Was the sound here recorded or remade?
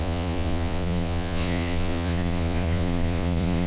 remade